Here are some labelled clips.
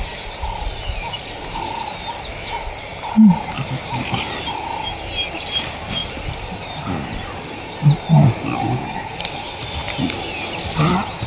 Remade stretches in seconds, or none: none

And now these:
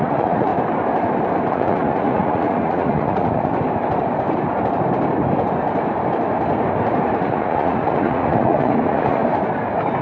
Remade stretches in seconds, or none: 0.0-0.5 (vocoder, Vocos); 1.5-3.5; 7.2-9.2

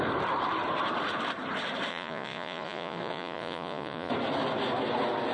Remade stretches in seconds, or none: 1.9-4.1 (vocoder, Vocos)

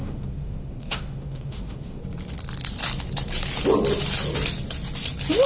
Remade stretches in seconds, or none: 0.0-2.0 (autoencoder, DAC-VAE)

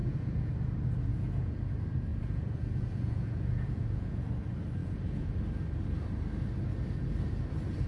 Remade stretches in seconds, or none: 0.0-0.5 (vocoder, Vocos); 1.1-1.6; 2.1-4.3; 4.8-5.3

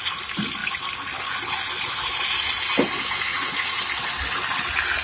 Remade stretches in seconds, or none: 3.3-3.8 (vocoder, Vocos)

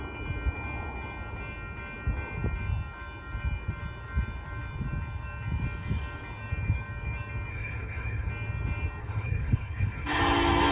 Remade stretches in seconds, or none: 7.5-8.3 (codec, HILCodec); 9.0-10.2

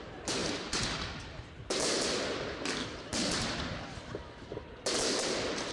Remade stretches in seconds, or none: none